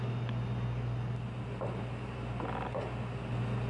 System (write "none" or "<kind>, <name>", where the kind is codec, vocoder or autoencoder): none